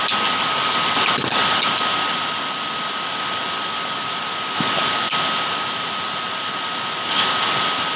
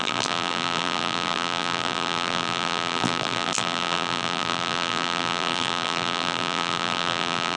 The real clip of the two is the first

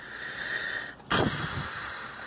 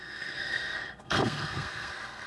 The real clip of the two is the first